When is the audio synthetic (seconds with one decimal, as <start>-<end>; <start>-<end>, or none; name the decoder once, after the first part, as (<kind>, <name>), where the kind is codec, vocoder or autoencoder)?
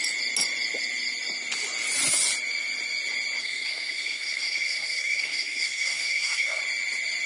3.4-6.6 (codec, SNAC)